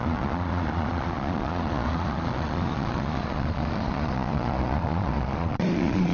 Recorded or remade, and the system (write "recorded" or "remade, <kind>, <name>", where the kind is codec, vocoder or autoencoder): remade, vocoder, Vocos